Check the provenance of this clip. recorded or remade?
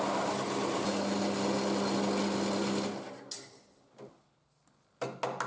recorded